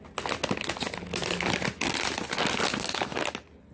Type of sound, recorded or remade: recorded